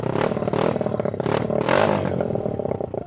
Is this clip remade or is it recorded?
recorded